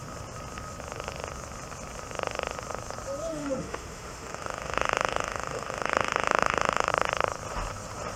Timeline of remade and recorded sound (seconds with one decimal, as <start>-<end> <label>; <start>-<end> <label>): 0.0-3.3 recorded; 3.3-6.9 remade; 6.9-8.2 recorded